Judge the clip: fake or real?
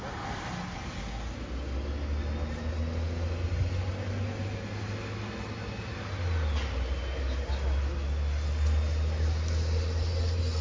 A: real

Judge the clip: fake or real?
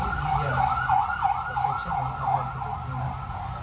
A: real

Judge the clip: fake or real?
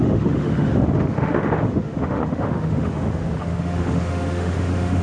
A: fake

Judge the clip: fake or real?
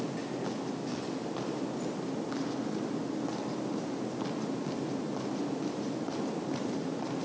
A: real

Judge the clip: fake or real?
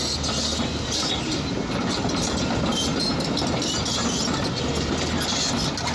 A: real